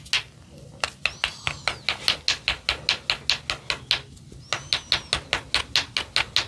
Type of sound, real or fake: real